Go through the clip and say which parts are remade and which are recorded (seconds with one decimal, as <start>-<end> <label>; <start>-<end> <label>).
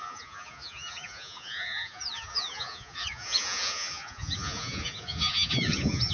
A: 0.0-6.1 remade